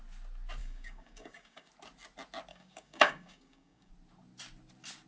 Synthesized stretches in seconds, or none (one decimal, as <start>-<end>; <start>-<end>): 0.6-1.7; 2.5-3.9